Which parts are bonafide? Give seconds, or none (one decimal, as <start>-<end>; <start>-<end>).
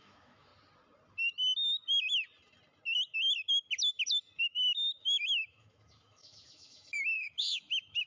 0.5-4.4